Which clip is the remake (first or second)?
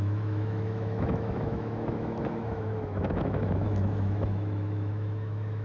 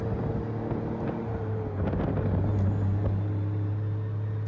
first